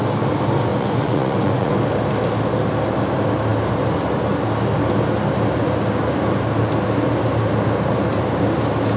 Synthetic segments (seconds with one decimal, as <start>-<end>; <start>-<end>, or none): 0.7-1.7